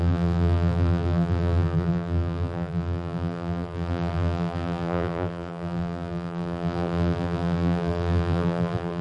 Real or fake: fake